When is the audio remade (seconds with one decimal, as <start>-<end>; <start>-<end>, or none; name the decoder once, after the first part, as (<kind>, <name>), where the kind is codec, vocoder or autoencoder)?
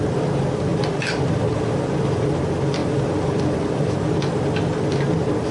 0.7-1.6 (vocoder, BigVGAN v2); 2.8-3.9